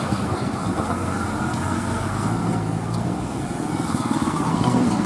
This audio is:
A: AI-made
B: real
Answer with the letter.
A